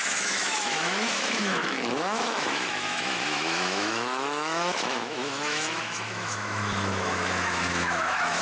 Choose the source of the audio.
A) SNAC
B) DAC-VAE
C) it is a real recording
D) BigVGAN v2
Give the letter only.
B